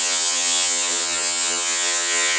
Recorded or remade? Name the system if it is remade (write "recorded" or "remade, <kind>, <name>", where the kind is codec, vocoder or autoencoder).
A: remade, vocoder, HiFi-GAN